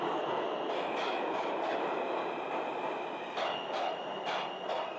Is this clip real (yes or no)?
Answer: yes